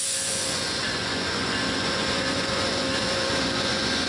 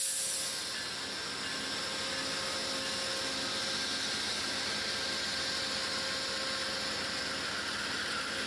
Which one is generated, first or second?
first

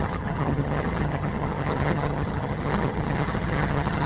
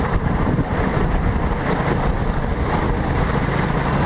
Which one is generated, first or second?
first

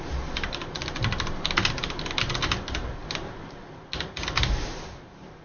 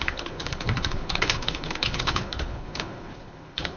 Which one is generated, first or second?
second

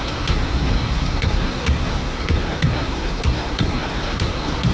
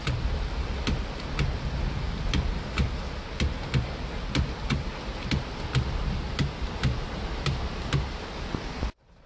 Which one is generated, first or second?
first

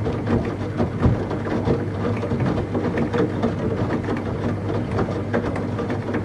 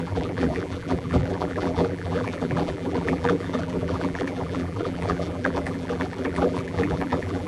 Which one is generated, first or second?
second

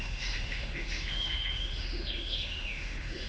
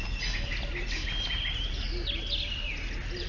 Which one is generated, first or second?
first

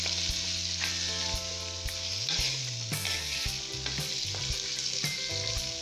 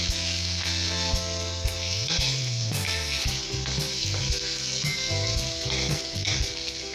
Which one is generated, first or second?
second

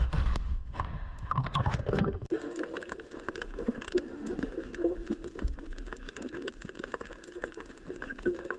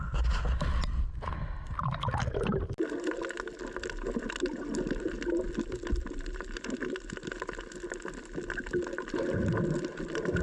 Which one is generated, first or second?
first